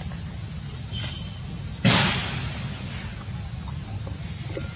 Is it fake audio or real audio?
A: real